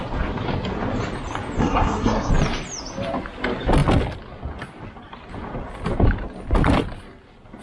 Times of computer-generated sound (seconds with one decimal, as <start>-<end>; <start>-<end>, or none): 1.6-2.3